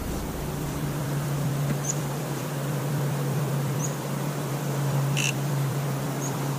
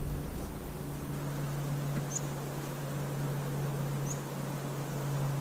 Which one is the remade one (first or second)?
first